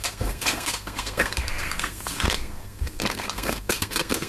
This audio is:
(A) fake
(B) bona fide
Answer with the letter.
A